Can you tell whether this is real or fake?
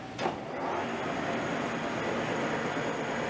real